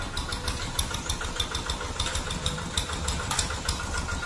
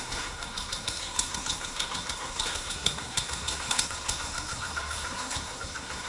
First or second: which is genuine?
first